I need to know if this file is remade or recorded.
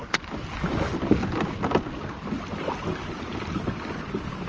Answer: recorded